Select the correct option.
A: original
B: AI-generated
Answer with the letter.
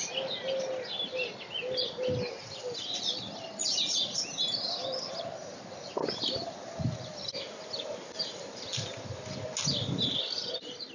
A